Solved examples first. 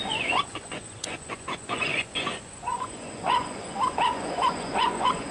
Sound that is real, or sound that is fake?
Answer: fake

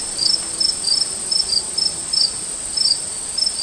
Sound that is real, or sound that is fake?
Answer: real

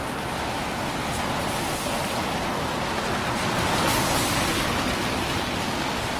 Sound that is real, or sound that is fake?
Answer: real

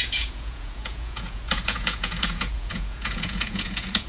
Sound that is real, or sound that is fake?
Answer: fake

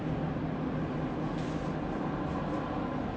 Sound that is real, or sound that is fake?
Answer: real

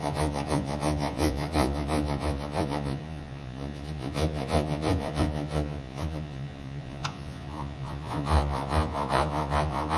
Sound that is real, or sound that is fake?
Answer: fake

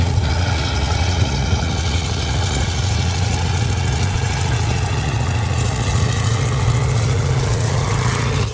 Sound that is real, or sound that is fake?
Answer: fake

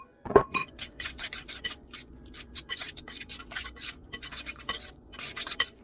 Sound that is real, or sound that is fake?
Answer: fake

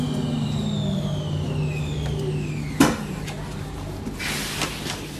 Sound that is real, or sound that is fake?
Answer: real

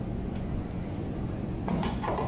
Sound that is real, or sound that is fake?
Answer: fake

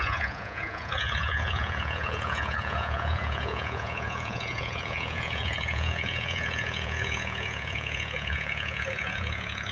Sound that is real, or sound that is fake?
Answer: fake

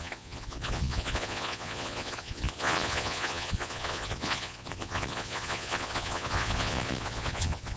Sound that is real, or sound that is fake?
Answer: fake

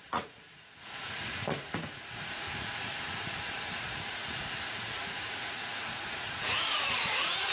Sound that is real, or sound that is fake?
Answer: fake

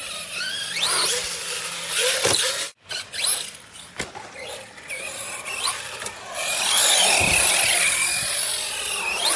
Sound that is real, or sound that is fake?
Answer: real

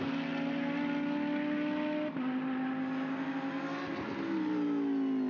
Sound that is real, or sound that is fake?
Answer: real